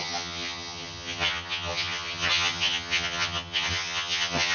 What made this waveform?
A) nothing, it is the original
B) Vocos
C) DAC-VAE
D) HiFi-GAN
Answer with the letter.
D